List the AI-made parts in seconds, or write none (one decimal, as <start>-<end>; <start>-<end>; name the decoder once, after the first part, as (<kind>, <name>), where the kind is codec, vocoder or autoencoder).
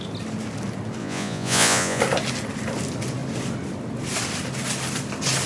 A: 1.0-2.0 (vocoder, Vocos)